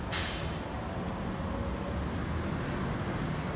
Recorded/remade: recorded